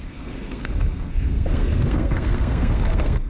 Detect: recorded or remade remade